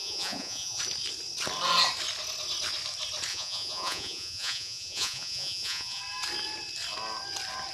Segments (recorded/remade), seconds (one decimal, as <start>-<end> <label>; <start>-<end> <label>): 0.0-0.8 remade; 0.8-3.3 recorded; 3.3-6.0 remade; 6.0-7.7 recorded